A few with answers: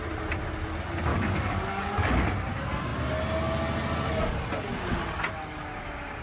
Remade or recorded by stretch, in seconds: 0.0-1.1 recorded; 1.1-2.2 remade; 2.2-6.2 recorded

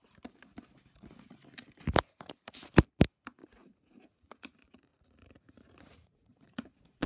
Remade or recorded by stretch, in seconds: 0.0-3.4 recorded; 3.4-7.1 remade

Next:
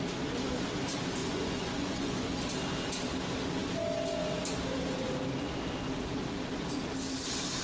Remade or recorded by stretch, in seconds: 0.0-1.2 recorded; 1.2-2.3 remade; 2.3-7.6 recorded

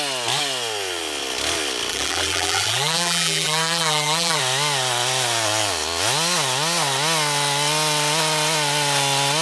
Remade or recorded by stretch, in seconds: 0.0-1.9 recorded; 1.9-4.4 remade; 4.4-9.4 recorded

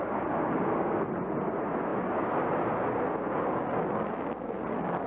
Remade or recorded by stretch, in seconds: 0.0-5.1 recorded

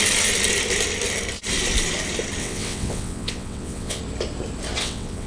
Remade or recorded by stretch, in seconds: 0.0-2.4 recorded; 2.4-4.0 remade; 4.0-4.8 recorded; 4.8-5.3 remade